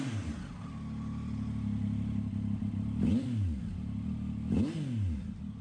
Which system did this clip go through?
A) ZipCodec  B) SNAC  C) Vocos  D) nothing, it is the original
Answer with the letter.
D